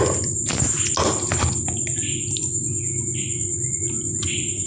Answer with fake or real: real